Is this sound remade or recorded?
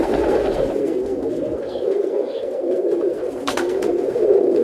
remade